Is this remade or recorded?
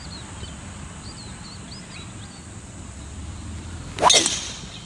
recorded